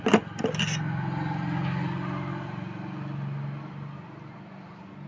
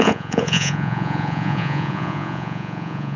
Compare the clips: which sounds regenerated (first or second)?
second